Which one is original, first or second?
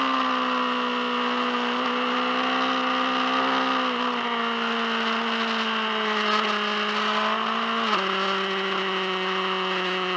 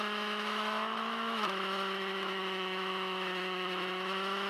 first